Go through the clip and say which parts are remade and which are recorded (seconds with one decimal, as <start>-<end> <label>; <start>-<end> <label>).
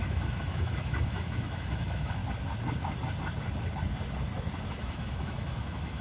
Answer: 0.0-2.2 remade; 2.2-4.7 recorded; 4.7-6.0 remade